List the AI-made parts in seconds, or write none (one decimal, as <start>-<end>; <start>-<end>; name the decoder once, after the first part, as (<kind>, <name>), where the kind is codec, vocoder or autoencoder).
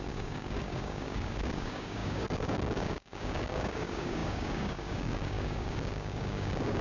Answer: 0.0-6.8 (codec, DAC)